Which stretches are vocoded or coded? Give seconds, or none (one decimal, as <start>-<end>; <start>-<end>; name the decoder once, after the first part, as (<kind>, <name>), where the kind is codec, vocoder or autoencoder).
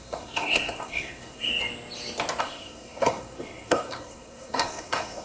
0.0-1.5 (codec, SNAC); 2.4-5.2